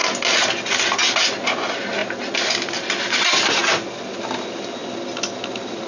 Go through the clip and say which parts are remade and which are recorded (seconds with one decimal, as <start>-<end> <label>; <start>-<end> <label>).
0.0-5.9 recorded